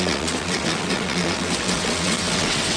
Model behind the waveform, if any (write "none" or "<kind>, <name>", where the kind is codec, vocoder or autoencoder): vocoder, WaveNeXt